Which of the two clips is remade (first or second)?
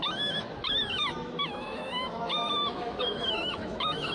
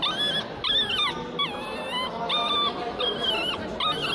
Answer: first